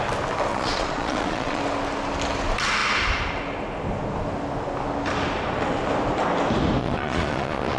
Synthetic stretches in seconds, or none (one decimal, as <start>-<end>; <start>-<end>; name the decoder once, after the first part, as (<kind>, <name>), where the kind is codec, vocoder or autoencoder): 0.5-1.6 (vocoder, Vocos); 6.8-7.8